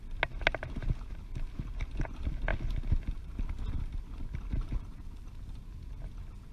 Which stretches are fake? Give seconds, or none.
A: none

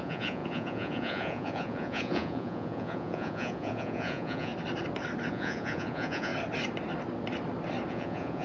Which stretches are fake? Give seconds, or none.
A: 0.0-4.5; 5.3-6.3; 7.9-8.4

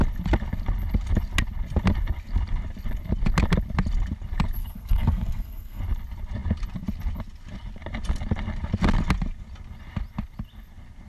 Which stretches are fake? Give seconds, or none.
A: 4.6-5.8

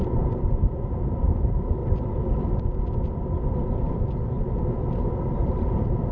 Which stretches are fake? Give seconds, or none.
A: 0.0-1.8; 5.5-6.1

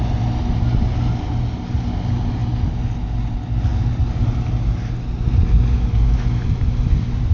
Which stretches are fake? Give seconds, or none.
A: none

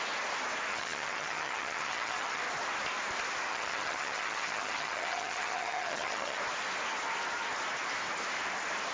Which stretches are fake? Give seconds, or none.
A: 0.7-2.4; 3.5-6.4

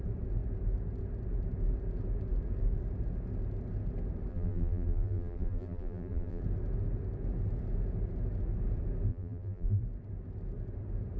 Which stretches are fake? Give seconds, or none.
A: 4.3-6.4; 9.1-9.8

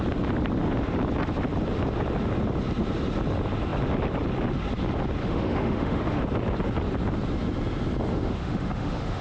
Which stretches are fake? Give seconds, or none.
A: 5.2-6.2; 8.1-9.2